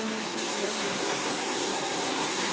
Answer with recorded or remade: remade